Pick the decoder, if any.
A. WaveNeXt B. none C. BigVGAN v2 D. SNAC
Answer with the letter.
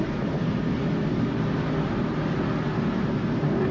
B